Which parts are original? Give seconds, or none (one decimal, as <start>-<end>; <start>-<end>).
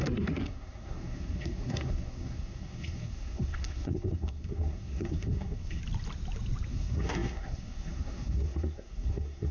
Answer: 5.8-6.7